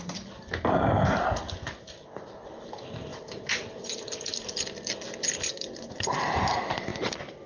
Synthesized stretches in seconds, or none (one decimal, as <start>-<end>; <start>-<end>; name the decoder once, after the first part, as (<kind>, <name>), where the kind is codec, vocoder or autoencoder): none